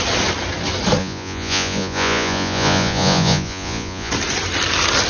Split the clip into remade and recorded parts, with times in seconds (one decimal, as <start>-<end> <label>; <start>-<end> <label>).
0.0-1.0 recorded; 1.0-4.1 remade; 4.1-5.1 recorded